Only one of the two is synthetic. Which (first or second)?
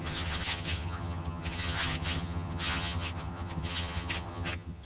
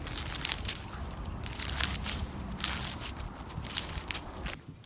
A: first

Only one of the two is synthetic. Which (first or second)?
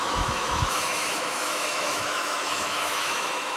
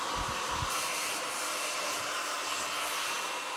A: first